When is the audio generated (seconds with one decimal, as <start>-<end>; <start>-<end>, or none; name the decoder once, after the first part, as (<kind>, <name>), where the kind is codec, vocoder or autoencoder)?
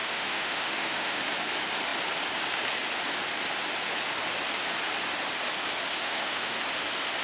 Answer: 0.0-1.2 (autoencoder, DAC-VAE); 6.0-6.6